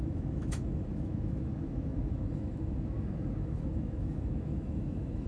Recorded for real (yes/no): no